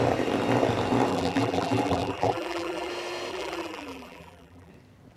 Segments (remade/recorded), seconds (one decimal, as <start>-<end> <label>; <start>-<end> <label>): 0.0-1.1 recorded; 1.1-2.9 remade; 2.9-3.3 recorded; 3.3-4.7 remade; 4.7-5.2 recorded